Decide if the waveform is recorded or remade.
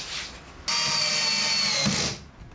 recorded